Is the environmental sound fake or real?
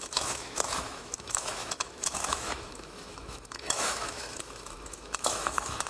fake